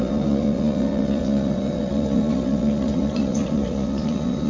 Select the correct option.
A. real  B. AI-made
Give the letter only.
B